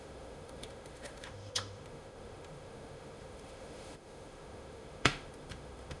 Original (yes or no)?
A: no